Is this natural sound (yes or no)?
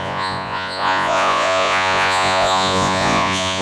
no